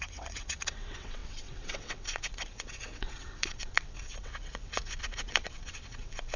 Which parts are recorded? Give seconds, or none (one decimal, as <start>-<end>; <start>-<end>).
none